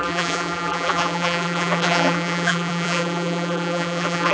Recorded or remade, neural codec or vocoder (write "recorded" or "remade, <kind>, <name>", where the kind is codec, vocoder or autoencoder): remade, vocoder, BigVGAN v2